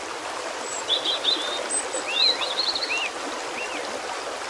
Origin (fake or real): real